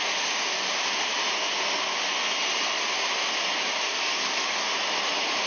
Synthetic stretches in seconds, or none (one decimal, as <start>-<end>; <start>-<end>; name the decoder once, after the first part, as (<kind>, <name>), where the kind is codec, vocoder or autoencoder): 3.8-4.7 (codec, DAC)